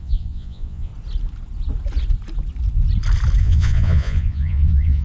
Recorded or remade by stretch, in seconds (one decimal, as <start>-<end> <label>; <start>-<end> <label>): 0.0-0.9 remade; 0.9-3.4 recorded; 3.4-5.0 remade